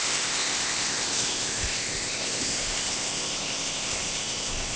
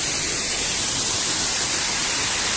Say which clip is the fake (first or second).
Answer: first